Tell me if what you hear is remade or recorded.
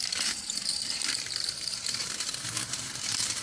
remade